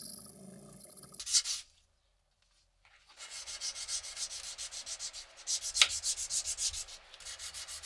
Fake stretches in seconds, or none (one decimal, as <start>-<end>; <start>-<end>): 2.9-4.2